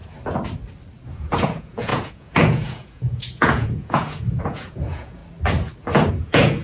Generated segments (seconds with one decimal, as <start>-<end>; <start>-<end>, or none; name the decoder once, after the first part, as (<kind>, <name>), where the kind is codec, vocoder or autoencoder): 1.1-5.2 (vocoder, Vocos); 6.1-6.6

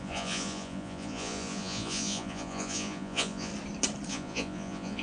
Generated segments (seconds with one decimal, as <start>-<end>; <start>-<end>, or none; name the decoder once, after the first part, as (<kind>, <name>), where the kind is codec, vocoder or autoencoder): 0.0-3.5 (vocoder, Vocos); 4.1-5.0

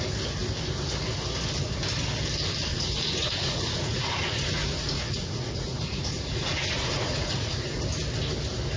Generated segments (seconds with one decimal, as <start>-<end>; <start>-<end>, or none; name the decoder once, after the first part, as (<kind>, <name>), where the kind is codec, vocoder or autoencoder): 2.7-7.8 (vocoder, Vocos)

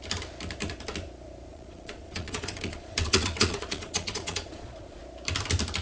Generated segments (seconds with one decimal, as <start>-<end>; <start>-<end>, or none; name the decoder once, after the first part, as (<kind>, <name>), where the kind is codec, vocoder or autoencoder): 1.5-5.0 (vocoder, Vocos)

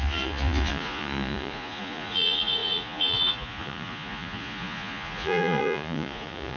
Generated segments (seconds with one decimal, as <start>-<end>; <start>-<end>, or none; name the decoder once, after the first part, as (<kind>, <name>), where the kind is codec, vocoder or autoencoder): 0.0-6.6 (vocoder, Vocos)

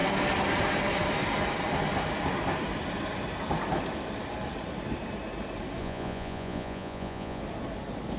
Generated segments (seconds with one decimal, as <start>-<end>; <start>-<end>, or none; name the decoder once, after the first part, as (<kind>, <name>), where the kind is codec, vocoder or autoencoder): 5.8-7.4 (vocoder, Vocos)

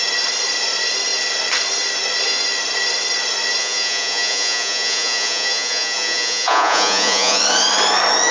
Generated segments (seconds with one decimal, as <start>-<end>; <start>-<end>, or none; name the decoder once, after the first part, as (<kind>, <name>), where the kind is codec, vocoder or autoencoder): 3.6-7.4 (vocoder, Vocos)

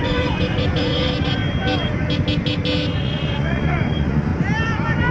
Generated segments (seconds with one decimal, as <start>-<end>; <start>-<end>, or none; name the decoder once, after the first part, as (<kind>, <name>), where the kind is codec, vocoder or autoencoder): 0.0-1.4 (vocoder, Vocos); 3.0-4.3